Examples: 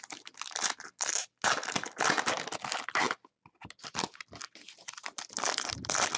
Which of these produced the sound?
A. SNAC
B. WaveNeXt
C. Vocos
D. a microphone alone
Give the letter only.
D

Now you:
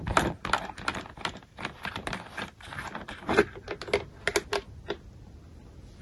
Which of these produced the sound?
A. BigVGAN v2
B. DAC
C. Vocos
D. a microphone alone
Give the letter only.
D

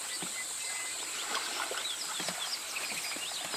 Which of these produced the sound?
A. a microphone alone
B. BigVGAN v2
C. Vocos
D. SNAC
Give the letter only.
A